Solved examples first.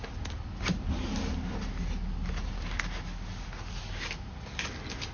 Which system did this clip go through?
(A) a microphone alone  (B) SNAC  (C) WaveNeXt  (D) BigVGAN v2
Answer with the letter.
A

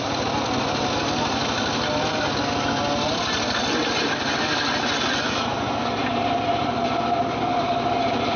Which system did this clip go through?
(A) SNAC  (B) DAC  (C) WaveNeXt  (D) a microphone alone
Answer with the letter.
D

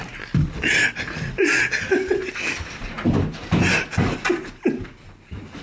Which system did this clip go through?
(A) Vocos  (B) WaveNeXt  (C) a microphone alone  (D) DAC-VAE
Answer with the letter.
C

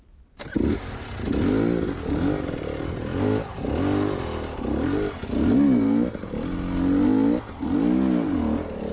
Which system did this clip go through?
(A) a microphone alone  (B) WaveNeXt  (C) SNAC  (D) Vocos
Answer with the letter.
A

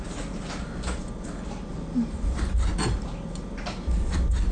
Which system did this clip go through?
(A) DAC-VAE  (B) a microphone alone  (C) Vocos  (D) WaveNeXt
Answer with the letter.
B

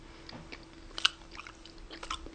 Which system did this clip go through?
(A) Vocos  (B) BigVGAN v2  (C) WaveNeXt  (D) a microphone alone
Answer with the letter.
D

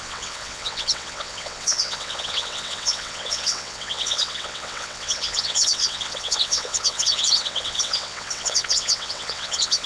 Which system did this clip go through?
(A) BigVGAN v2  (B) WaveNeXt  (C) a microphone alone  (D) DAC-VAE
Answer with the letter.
B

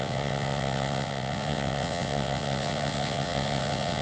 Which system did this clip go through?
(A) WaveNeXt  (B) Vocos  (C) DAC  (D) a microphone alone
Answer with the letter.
A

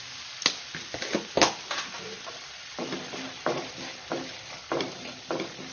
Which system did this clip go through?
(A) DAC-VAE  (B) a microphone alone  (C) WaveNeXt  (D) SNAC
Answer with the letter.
B